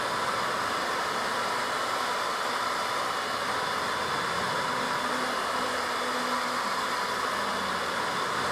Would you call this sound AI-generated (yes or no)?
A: no